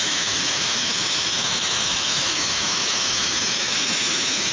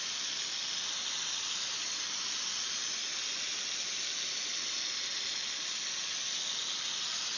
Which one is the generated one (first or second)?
first